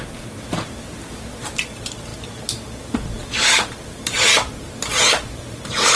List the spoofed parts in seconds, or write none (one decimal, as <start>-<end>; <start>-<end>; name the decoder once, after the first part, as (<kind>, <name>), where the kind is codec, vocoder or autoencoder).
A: 0.0-2.1 (vocoder, BigVGAN v2); 3.2-6.0